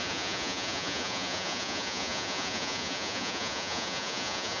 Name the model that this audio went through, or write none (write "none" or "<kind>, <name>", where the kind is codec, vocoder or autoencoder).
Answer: vocoder, Vocos